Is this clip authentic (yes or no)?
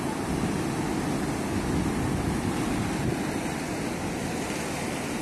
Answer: yes